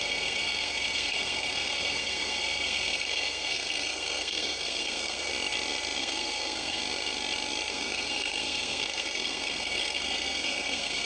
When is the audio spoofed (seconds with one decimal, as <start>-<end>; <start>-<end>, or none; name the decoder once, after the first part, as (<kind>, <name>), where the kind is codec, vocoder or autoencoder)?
0.0-5.3 (codec, SNAC); 6.0-6.8; 7.7-11.1